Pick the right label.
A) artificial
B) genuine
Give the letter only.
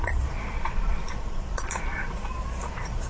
A